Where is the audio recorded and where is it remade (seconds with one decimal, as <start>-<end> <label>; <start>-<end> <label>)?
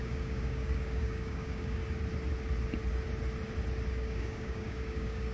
0.0-1.8 remade; 1.8-3.9 recorded; 3.9-5.3 remade